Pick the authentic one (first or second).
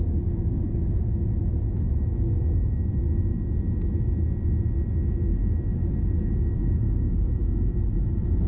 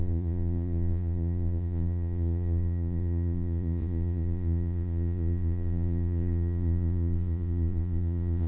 first